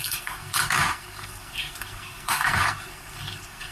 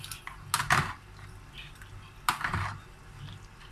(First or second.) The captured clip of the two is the second